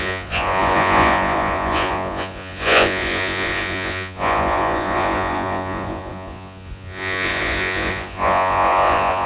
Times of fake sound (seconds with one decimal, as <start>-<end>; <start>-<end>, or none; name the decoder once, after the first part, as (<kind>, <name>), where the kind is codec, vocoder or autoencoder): 0.0-9.3 (vocoder, Vocos)